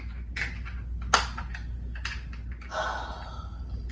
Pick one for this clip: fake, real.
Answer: real